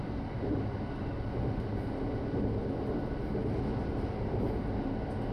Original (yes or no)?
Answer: yes